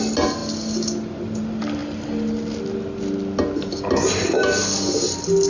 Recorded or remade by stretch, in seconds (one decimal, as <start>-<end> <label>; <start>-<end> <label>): 0.0-5.5 recorded